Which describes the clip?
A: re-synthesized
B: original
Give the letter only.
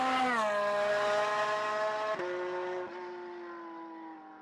B